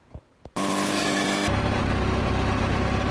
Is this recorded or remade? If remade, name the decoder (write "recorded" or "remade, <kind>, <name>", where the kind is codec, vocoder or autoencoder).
recorded